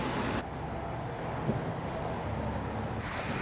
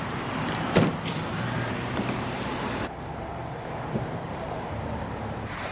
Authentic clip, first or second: first